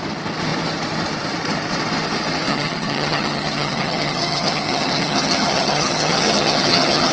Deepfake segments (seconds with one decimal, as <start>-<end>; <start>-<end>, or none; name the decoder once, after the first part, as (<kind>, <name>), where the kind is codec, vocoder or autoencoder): 2.5-7.1 (vocoder, HiFi-GAN)